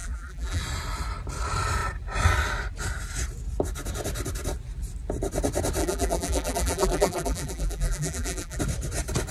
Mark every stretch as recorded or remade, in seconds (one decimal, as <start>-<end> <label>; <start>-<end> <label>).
0.0-0.6 remade; 0.6-5.8 recorded; 5.8-8.6 remade; 8.6-9.3 recorded